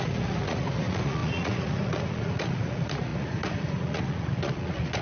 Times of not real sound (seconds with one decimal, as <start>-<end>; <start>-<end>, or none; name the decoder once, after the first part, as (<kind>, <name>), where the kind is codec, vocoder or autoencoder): 0.0-5.0 (vocoder, Vocos)